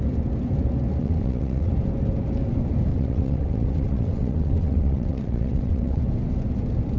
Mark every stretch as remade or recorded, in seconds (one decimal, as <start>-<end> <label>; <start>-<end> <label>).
0.0-1.0 recorded; 1.0-1.7 remade; 1.7-2.9 recorded; 2.9-6.0 remade; 6.0-7.0 recorded